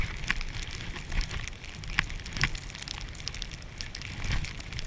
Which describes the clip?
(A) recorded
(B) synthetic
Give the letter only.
A